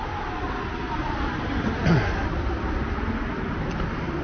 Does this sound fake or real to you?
real